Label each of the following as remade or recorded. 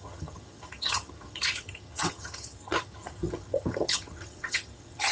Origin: remade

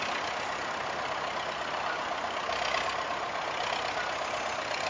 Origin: recorded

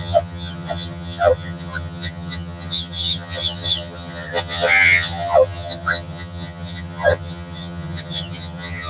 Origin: remade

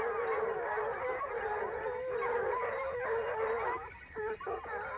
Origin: recorded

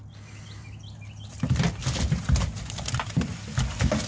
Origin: recorded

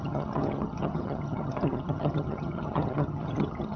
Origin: remade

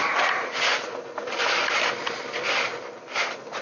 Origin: recorded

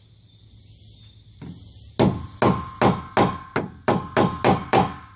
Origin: recorded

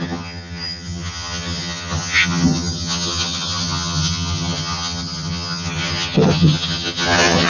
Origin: remade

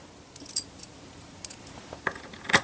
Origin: recorded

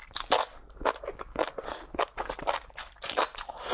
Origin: recorded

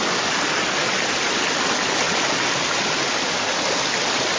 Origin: recorded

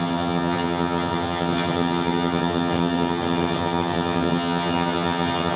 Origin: remade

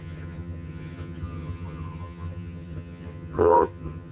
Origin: remade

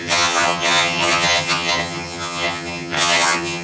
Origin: remade